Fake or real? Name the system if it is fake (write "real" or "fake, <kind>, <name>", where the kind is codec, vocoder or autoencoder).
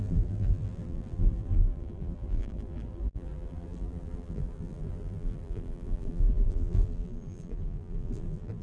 fake, vocoder, BigVGAN v2